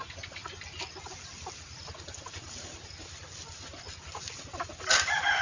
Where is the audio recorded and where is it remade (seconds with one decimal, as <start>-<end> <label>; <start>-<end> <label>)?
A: 0.0-5.4 recorded